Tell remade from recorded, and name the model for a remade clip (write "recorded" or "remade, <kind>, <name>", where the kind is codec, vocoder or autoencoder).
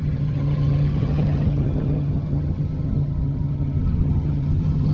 remade, vocoder, HiFi-GAN